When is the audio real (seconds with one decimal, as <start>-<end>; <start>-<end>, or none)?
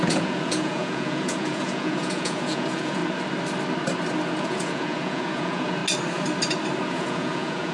3.0-4.4; 5.8-6.9